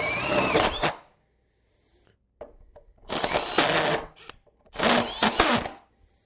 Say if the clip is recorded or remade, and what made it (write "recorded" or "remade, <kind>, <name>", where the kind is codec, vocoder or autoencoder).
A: recorded